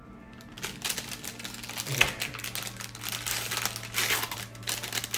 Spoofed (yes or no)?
no